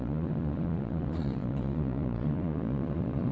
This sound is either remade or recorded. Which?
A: remade